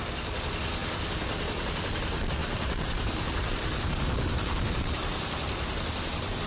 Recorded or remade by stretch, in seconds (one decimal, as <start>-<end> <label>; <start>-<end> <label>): 0.0-2.4 recorded; 2.4-6.1 remade; 6.1-6.5 recorded